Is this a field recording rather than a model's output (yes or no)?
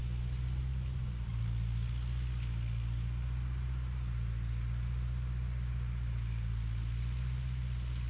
yes